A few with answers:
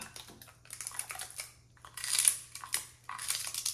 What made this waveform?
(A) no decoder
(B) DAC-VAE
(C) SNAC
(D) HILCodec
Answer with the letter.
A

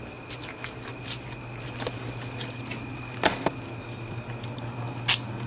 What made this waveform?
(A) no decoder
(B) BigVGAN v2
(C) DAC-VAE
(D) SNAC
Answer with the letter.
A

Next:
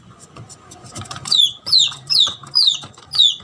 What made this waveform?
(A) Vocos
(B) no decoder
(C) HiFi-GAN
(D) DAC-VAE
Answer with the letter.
A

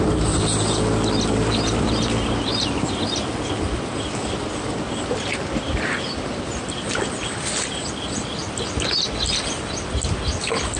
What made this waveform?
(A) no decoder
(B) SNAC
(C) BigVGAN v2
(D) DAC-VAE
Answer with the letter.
A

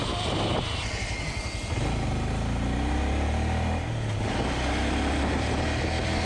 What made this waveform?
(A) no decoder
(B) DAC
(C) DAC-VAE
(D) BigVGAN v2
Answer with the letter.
A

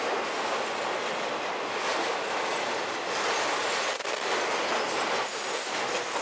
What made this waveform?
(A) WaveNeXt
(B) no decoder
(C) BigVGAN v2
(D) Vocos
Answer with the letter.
B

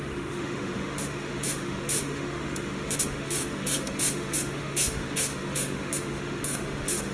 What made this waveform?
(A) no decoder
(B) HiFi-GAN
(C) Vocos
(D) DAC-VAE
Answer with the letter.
D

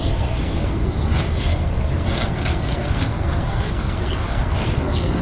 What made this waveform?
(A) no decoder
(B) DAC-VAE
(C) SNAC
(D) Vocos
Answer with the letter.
C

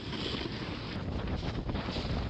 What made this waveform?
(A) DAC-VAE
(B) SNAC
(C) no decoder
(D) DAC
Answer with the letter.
C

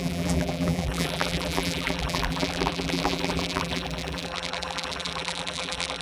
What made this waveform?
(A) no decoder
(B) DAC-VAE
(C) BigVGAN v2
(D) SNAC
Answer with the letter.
C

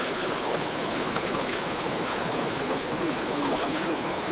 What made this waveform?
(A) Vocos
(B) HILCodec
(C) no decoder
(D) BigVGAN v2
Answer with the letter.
B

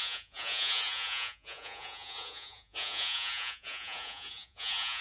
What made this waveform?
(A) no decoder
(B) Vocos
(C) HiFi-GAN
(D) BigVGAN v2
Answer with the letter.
B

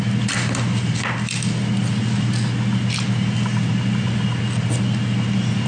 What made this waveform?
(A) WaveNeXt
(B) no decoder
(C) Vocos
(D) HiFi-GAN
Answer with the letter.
B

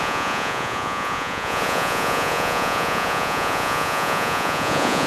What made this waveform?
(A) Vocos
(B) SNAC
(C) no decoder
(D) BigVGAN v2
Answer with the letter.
A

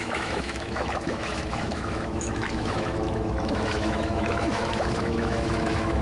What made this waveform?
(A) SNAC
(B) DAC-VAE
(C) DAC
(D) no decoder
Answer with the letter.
B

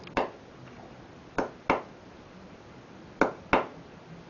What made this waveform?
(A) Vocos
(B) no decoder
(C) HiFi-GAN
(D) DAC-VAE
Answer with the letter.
B